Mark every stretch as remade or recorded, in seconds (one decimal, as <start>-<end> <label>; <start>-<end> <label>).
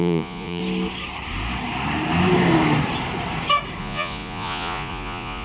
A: 0.0-0.6 remade; 0.6-3.8 recorded; 3.8-5.4 remade